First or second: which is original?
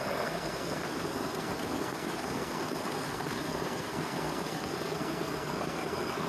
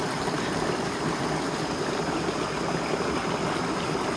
second